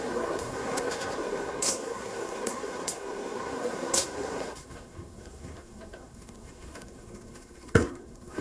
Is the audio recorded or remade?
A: remade